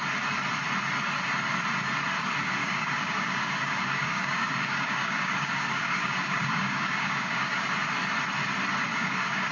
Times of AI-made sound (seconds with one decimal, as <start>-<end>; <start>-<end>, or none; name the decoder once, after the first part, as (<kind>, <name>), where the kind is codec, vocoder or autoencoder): 2.6-7.7 (codec, DAC); 8.9-9.5